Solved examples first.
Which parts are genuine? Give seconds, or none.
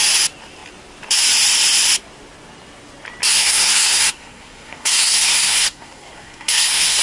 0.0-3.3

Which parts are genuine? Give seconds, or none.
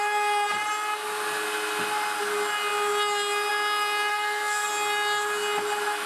0.0-4.1; 4.7-6.1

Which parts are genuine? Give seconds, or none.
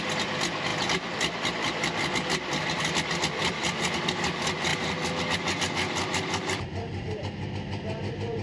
0.0-0.7; 2.0-8.4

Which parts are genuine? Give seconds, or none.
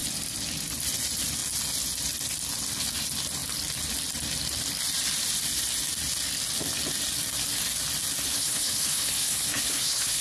0.0-8.3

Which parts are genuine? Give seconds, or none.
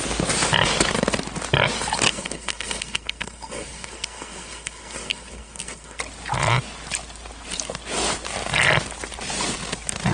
0.0-2.1; 6.0-10.1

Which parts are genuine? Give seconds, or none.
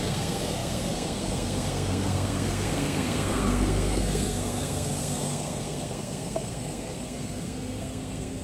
none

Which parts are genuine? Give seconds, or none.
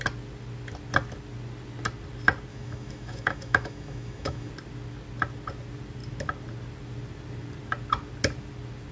0.0-2.5; 4.5-8.9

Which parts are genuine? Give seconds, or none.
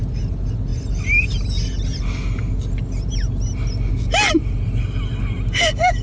0.0-6.0